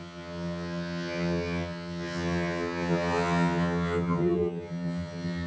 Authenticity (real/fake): fake